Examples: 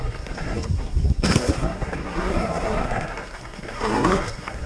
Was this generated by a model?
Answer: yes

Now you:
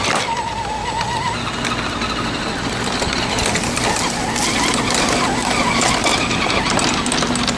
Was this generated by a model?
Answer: no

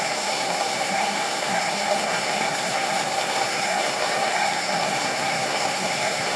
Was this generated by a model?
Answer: yes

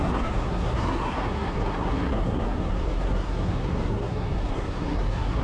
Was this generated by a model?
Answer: yes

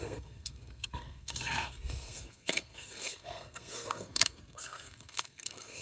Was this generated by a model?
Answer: yes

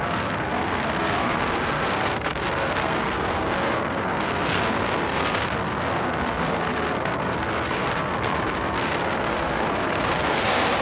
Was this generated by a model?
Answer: yes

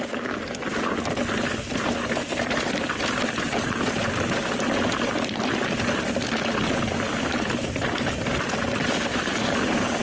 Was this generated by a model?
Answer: no